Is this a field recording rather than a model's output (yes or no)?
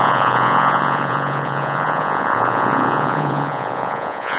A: no